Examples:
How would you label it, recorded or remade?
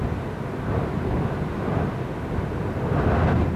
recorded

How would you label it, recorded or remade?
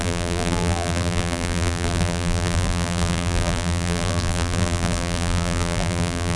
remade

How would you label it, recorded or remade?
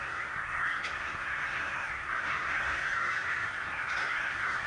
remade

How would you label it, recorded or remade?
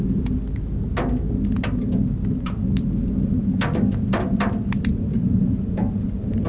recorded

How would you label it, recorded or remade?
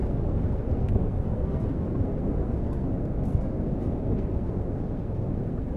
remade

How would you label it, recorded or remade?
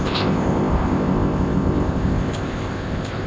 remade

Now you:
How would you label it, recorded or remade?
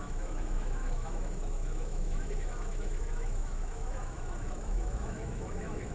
remade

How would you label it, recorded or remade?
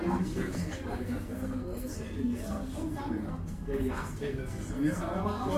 remade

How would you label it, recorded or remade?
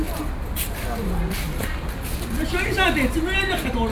recorded